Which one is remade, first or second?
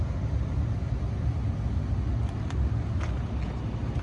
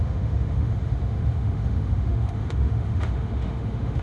second